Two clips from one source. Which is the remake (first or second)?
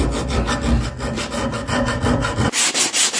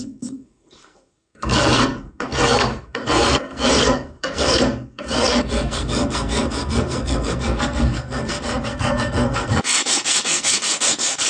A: second